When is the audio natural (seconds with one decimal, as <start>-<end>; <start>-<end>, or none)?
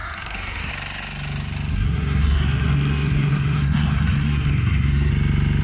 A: 0.7-1.7; 5.1-5.6